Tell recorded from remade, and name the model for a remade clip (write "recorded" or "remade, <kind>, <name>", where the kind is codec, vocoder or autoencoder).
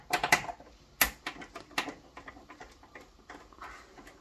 recorded